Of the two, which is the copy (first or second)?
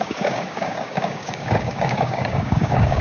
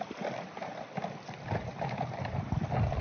first